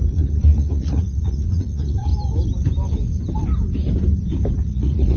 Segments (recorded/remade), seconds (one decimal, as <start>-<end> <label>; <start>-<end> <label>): 0.0-2.1 remade; 2.1-4.6 recorded; 4.6-5.2 remade